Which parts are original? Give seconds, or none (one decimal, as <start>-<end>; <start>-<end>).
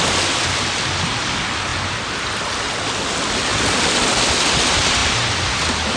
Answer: 0.0-6.0